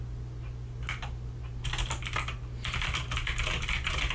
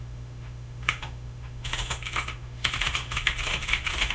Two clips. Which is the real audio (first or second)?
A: first